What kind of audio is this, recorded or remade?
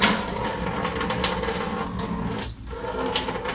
recorded